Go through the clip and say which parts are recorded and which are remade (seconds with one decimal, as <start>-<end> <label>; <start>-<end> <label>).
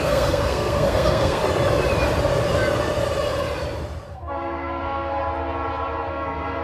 0.0-1.4 remade; 1.4-4.1 recorded; 4.1-5.2 remade; 5.2-6.1 recorded; 6.1-6.6 remade